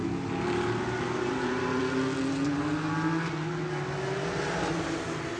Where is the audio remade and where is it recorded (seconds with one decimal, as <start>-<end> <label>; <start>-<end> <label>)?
0.0-5.4 recorded